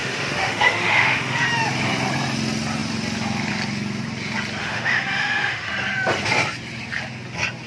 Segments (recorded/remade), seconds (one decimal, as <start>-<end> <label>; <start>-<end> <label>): 0.0-1.4 remade; 1.4-4.6 recorded; 4.6-5.7 remade; 5.7-7.7 recorded